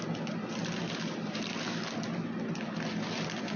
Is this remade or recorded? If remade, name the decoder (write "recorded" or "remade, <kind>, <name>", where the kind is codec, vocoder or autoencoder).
recorded